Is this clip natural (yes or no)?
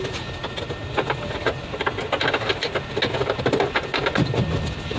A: yes